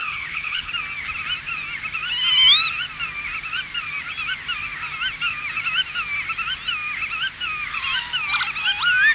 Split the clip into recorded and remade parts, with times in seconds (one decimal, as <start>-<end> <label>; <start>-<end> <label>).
0.0-0.7 remade; 0.7-9.1 recorded